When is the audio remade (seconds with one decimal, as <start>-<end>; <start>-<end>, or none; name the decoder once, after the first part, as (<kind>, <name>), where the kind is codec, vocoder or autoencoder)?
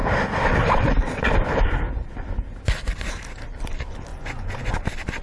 4.1-4.7 (vocoder, Vocos)